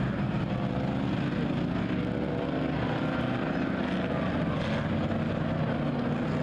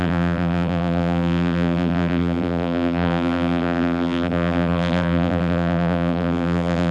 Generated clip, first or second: second